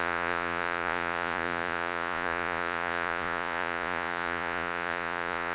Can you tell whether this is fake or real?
fake